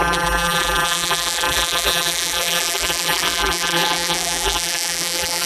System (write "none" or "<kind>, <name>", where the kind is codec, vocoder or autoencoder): vocoder, BigVGAN v2